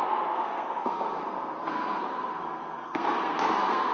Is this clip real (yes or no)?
no